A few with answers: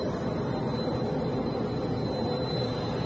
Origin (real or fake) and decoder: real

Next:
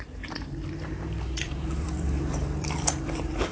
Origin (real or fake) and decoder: fake, vocoder, BigVGAN v2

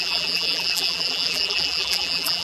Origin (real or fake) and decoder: fake, vocoder, BigVGAN v2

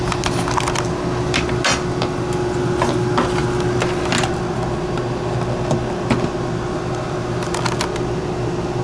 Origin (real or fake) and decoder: real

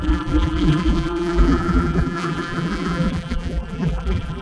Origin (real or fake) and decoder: fake, vocoder, BigVGAN v2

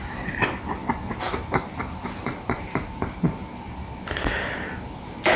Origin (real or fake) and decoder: fake, vocoder, BigVGAN v2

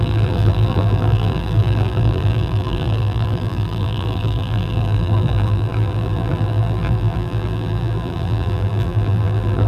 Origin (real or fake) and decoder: fake, vocoder, BigVGAN v2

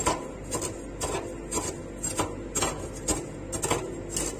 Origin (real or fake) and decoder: real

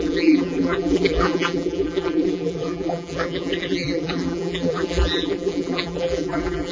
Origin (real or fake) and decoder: fake, vocoder, BigVGAN v2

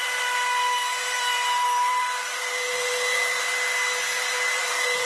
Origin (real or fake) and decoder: fake, vocoder, BigVGAN v2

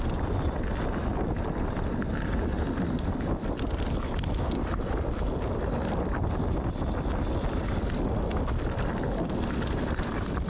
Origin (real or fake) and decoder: real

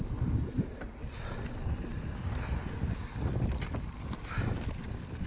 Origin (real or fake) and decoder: real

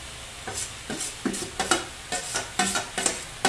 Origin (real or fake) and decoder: real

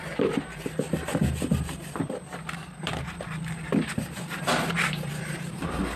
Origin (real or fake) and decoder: fake, vocoder, BigVGAN v2